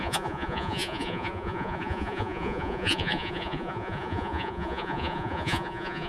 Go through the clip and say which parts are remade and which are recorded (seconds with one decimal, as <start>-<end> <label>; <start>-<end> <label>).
0.0-6.1 remade

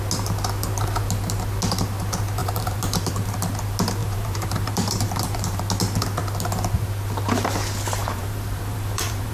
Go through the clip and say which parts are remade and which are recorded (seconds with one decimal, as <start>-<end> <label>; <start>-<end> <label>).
0.0-2.4 recorded; 2.4-3.1 remade; 3.1-4.0 recorded; 4.0-5.6 remade; 5.6-8.0 recorded; 8.0-9.3 remade

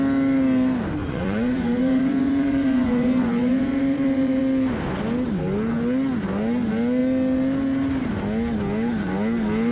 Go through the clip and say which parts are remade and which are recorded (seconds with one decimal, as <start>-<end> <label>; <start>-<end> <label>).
0.0-1.0 recorded; 1.0-4.4 remade; 4.4-9.7 recorded

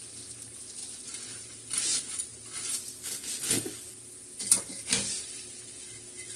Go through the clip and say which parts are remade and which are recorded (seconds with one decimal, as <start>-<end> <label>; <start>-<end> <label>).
0.0-6.4 recorded

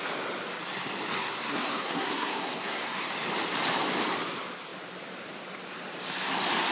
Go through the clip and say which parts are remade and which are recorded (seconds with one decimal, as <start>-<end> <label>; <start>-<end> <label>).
0.0-1.2 recorded; 1.2-3.1 remade; 3.1-6.7 recorded

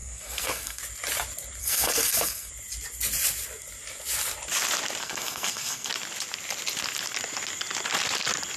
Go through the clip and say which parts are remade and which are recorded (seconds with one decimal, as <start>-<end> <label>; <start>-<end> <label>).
0.0-0.8 remade; 0.8-1.6 recorded; 1.6-2.5 remade; 2.5-5.0 recorded; 5.0-5.9 remade; 5.9-8.6 recorded

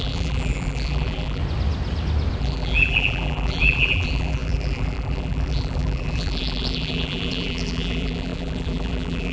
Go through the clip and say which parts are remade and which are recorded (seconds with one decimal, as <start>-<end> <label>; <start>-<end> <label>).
0.0-1.4 remade; 1.4-2.4 recorded; 2.4-9.3 remade